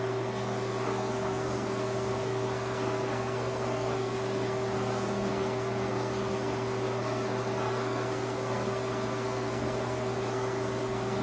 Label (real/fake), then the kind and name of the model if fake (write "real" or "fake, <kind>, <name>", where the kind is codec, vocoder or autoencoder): fake, codec, SNAC